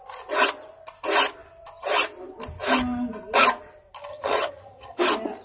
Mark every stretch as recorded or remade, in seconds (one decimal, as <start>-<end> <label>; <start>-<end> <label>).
0.0-4.1 recorded; 4.1-5.0 remade; 5.0-5.4 recorded